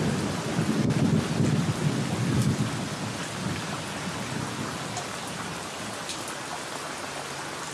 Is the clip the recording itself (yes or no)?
yes